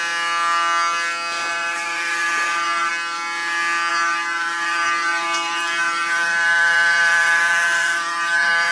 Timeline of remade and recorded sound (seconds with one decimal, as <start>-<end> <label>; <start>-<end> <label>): 0.0-1.5 recorded; 1.5-2.9 remade; 2.9-3.9 recorded; 3.9-8.7 remade